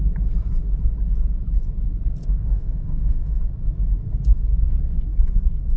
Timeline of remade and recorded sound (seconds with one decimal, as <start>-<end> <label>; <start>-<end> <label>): 0.0-2.2 recorded; 2.2-3.4 remade; 3.4-5.8 recorded